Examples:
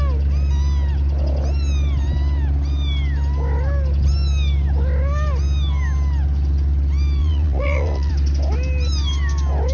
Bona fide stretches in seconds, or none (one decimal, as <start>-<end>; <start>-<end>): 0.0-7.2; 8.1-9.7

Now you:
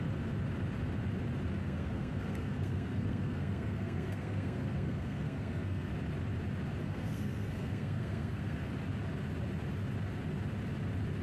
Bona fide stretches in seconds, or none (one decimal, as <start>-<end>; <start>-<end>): 0.0-1.6; 5.9-6.8; 8.7-11.2

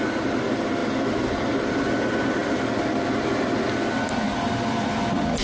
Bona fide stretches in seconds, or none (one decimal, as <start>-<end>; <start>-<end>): 0.0-5.4